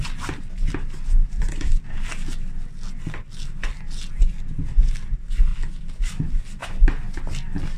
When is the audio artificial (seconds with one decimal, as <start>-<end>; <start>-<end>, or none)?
none